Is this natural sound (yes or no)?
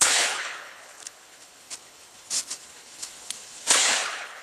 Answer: no